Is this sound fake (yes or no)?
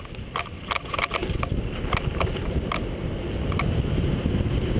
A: no